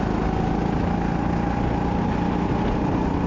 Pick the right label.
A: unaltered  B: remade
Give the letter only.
A